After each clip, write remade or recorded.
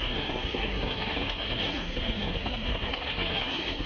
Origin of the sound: remade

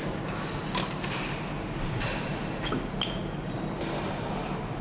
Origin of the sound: recorded